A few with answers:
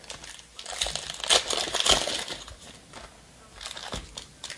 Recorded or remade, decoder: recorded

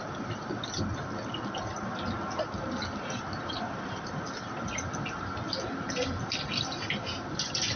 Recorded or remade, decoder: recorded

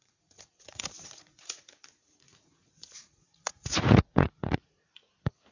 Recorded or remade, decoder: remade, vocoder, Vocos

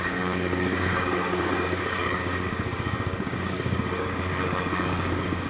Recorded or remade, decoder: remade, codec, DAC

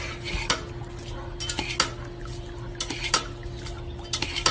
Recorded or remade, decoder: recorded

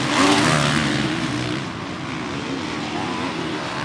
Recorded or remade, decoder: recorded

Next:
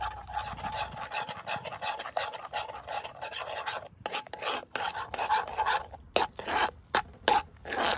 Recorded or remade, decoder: recorded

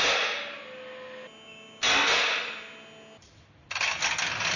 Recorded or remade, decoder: recorded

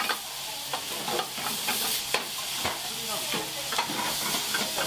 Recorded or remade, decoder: recorded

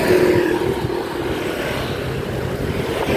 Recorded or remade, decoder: recorded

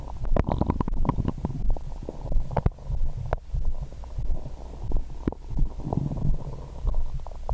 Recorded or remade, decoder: recorded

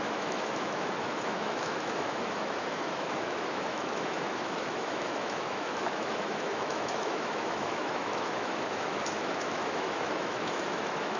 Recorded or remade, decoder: remade, autoencoder, DAC-VAE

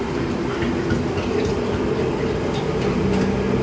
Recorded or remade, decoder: recorded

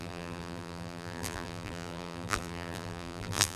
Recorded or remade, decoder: remade, vocoder, BigVGAN v2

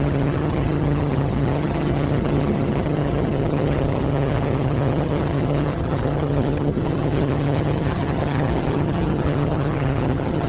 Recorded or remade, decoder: remade, vocoder, HiFi-GAN